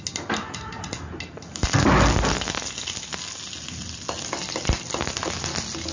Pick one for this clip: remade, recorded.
recorded